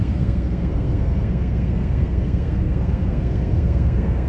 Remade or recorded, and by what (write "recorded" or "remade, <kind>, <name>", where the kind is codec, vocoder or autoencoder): remade, codec, SNAC